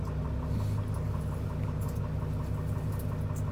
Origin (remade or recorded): recorded